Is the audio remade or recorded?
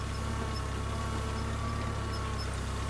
recorded